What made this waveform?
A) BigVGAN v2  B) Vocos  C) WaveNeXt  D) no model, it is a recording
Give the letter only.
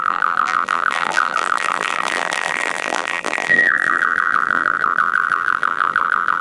A